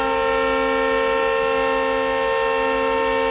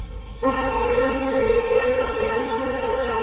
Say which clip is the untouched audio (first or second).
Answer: first